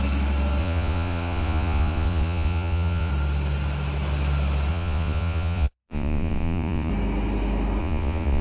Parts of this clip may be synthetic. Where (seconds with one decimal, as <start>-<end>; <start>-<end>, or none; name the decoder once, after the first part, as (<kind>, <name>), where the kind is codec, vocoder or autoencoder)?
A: 0.6-3.1 (vocoder, Vocos); 4.7-6.9; 7.8-8.4